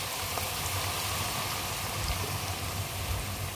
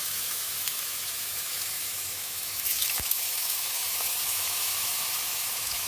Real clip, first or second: first